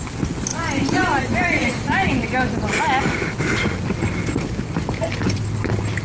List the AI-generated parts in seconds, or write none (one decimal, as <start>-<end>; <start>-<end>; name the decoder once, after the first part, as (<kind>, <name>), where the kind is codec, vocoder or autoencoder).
0.5-1.2 (vocoder, Vocos)